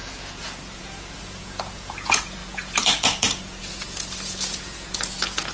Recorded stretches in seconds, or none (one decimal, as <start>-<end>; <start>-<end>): none